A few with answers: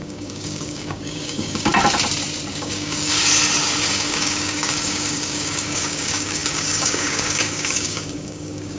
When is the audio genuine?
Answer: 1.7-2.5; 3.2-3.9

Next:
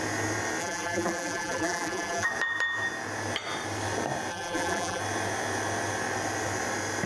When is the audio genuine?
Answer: 0.0-0.6; 2.3-4.3; 5.0-7.1

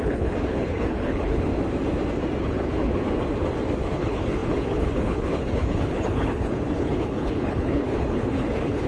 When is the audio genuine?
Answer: 1.5-2.4; 2.9-3.8